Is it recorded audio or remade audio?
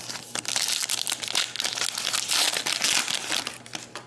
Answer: recorded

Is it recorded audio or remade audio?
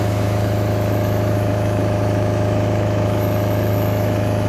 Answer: remade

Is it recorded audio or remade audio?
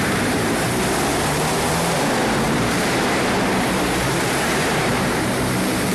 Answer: remade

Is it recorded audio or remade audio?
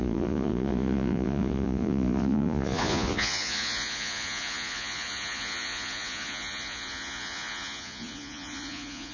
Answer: remade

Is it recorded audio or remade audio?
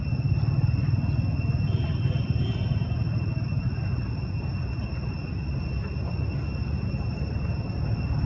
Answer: recorded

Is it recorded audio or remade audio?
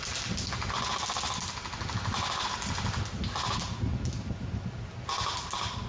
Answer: recorded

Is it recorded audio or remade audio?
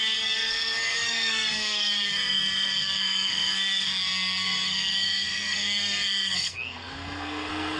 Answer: remade